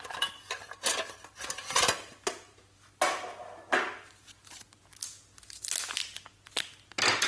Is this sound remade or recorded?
recorded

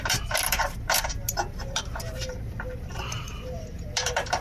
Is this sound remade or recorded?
remade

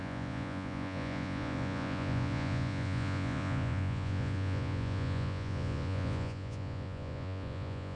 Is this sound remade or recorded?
remade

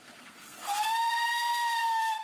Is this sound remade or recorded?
remade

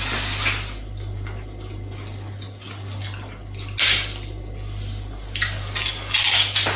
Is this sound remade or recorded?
recorded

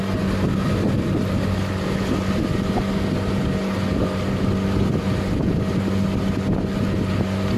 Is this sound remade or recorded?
recorded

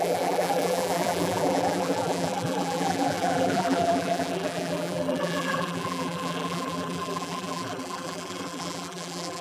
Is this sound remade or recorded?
remade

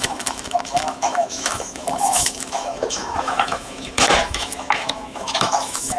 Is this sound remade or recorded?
remade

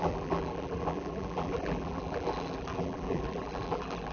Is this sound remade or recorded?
remade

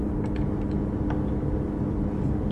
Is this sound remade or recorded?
recorded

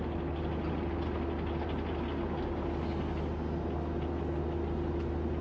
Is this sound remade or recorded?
recorded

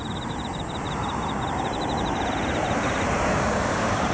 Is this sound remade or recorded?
remade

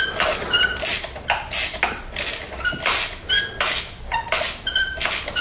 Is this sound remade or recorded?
recorded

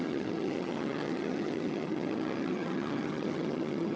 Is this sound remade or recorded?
remade